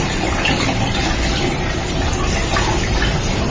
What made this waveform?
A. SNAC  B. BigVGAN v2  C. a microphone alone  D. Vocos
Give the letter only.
C